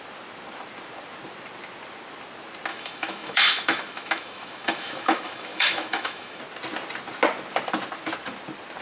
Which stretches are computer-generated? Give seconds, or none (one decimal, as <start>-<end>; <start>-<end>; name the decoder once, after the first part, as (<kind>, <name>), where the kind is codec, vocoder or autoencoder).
2.7-6.4 (autoencoder, DAC-VAE)